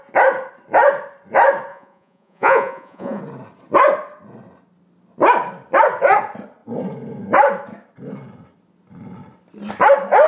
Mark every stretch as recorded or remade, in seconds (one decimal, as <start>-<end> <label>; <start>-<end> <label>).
0.0-1.7 recorded; 1.7-3.2 remade; 3.2-10.3 recorded